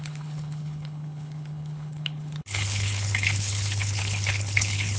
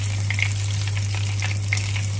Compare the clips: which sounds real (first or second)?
second